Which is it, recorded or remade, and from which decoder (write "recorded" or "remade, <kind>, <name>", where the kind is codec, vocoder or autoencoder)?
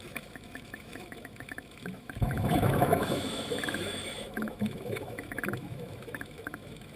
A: remade, autoencoder, DAC-VAE